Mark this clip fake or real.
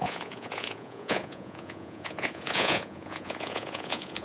fake